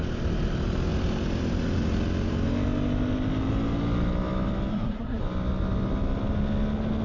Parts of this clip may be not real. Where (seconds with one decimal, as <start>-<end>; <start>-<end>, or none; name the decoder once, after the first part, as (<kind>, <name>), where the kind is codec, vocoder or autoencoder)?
4.7-5.2 (codec, SNAC)